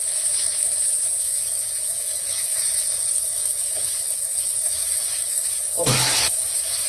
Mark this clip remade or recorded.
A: remade